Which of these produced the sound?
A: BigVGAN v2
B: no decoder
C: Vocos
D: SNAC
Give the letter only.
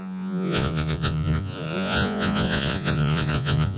C